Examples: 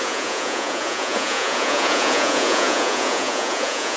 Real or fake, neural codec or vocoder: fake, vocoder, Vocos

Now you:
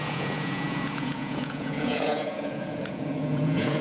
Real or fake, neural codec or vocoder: fake, vocoder, Vocos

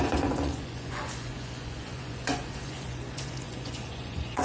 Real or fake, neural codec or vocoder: fake, vocoder, Vocos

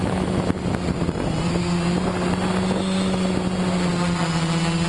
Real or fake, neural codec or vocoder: real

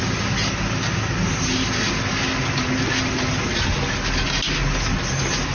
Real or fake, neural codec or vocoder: real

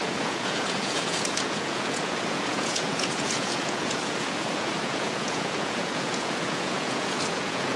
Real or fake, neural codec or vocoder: fake, vocoder, Vocos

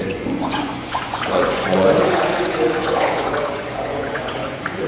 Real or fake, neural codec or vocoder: fake, vocoder, Vocos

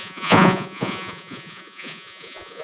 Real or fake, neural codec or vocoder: fake, vocoder, Vocos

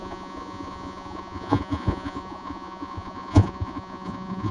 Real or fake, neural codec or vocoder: fake, vocoder, Vocos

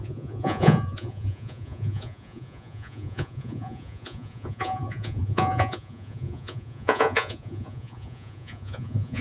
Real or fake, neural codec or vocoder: fake, vocoder, Vocos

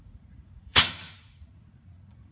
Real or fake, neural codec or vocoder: fake, vocoder, Vocos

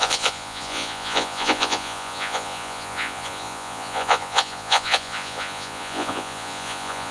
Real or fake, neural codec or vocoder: fake, vocoder, Vocos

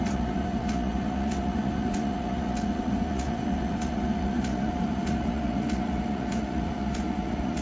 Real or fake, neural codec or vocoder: fake, vocoder, Vocos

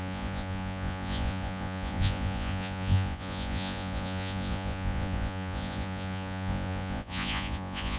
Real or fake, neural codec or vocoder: fake, vocoder, Vocos